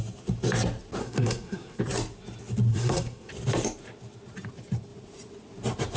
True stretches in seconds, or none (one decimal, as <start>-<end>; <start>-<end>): 0.0-1.0; 1.8-2.7; 3.3-6.0